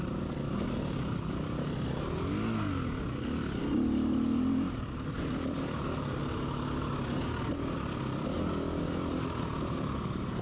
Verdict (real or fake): real